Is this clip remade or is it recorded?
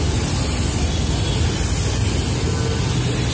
recorded